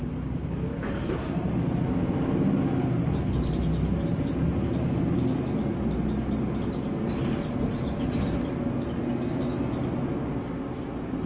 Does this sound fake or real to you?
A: real